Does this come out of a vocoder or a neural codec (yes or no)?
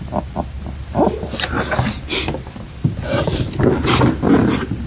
no